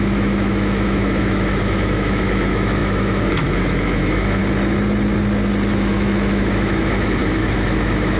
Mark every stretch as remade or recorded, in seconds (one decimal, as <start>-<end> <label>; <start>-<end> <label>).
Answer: 0.0-4.4 remade; 4.4-5.7 recorded; 5.7-8.2 remade